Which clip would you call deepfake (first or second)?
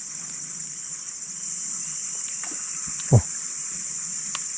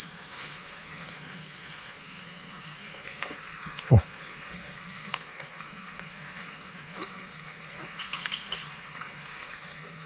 second